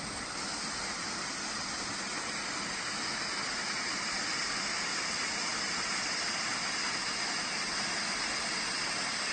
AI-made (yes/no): no